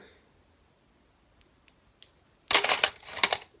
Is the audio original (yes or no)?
yes